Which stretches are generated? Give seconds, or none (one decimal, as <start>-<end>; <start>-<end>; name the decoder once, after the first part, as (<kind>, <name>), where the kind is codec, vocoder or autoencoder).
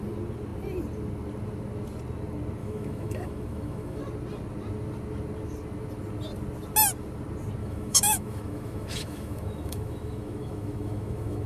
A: 2.6-4.0 (autoencoder, DAC-VAE); 7.6-11.5